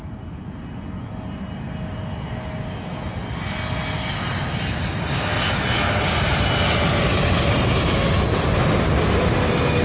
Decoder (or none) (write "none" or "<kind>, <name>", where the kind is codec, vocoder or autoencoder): none